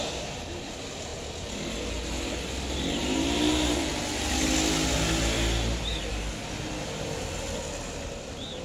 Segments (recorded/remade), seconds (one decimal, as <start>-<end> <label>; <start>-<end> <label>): 0.0-8.6 recorded